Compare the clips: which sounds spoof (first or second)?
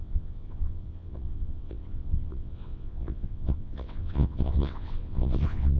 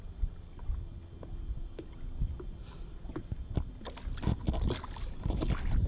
first